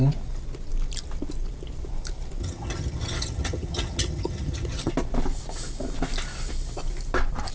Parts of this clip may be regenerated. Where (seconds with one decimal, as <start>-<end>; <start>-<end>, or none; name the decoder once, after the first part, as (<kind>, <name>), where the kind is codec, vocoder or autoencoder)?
2.4-4.9 (vocoder, HiFi-GAN)